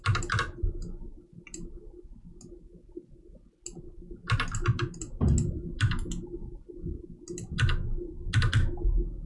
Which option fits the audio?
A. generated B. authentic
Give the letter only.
B